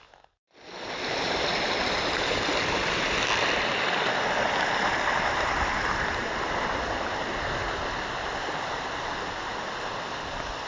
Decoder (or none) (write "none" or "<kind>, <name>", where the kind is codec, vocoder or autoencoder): none